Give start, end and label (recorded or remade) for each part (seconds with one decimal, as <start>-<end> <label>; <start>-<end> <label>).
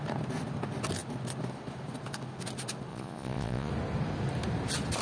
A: 0.0-2.9 recorded; 2.9-3.7 remade; 3.7-5.0 recorded